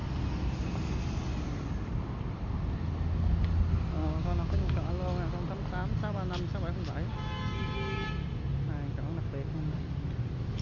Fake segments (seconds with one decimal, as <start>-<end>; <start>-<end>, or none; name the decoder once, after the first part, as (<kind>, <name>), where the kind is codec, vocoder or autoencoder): 4.0-4.9 (codec, DAC)